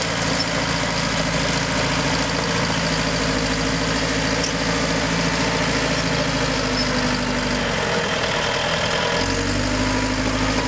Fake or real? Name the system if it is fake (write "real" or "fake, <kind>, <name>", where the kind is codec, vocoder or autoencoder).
real